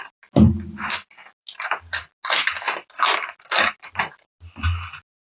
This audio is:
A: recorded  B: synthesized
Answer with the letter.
A